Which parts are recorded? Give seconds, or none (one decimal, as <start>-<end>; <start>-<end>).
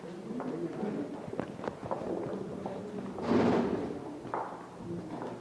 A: 0.0-5.4